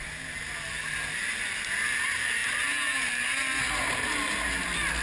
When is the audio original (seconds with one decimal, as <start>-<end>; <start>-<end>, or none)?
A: 0.0-5.0